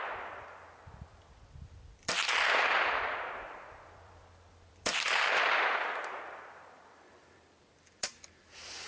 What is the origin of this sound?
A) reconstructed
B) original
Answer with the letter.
A